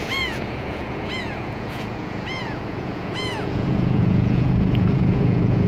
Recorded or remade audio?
remade